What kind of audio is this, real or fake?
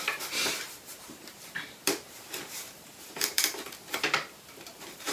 fake